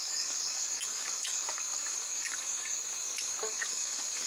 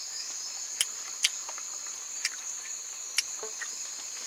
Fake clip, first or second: first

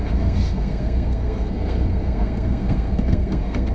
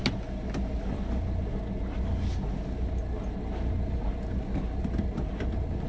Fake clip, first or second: first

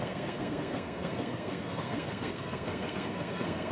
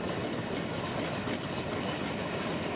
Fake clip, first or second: first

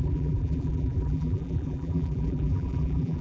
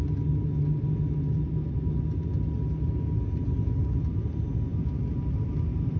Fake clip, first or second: first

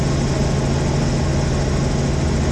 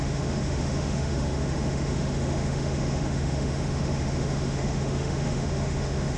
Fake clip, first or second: second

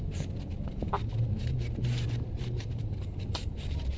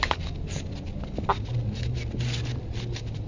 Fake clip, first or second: first